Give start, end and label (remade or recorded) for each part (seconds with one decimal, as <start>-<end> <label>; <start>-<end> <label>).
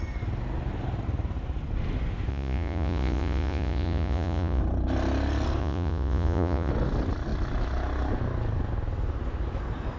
0.0-2.3 recorded; 2.3-4.6 remade; 4.6-5.6 recorded; 5.6-6.7 remade; 6.7-10.0 recorded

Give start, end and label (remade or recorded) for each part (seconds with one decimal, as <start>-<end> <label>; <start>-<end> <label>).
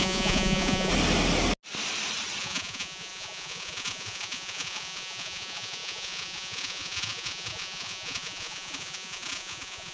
0.0-0.9 remade; 0.9-2.4 recorded; 2.4-9.9 remade